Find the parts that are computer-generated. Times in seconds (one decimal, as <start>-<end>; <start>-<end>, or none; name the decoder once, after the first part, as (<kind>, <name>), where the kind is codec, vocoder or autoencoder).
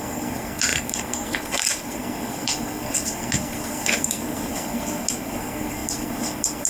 0.0-6.7 (codec, SNAC)